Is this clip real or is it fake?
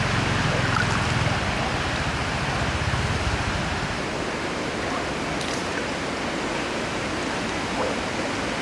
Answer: real